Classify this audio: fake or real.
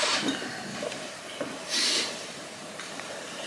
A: fake